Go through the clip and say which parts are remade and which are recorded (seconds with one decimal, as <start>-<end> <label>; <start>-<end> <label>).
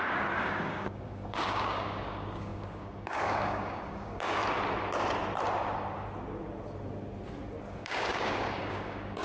0.0-4.4 remade; 4.4-7.7 recorded; 7.7-9.2 remade